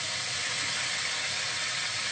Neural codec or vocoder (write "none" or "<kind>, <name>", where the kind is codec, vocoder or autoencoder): none